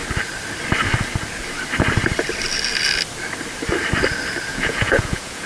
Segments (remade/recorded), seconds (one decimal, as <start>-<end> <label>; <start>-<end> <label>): 0.0-4.5 recorded; 4.5-5.5 remade